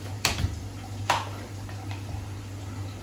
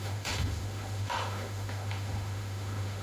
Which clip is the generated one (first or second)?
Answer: second